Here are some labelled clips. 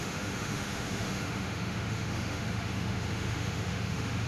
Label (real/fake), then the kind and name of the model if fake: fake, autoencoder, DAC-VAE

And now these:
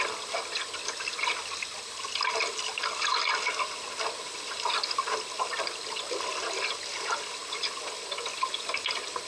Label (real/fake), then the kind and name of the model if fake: real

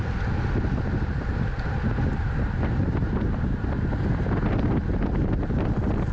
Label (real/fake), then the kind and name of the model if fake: real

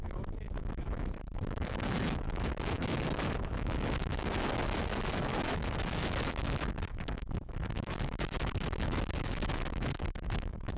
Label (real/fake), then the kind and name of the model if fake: fake, autoencoder, DAC-VAE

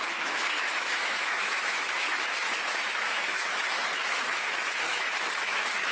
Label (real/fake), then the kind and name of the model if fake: fake, autoencoder, DAC-VAE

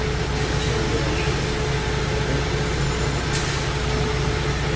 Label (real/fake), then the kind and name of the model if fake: real